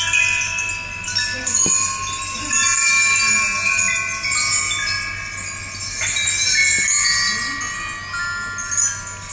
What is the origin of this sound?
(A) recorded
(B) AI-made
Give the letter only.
A